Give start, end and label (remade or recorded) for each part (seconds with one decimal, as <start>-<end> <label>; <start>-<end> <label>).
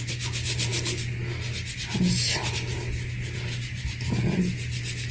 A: 0.0-5.1 recorded